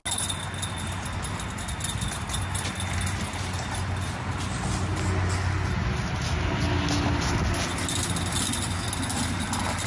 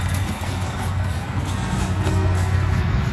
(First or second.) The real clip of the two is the first